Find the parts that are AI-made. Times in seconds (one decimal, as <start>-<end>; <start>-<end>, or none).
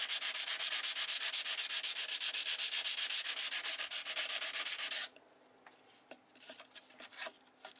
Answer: none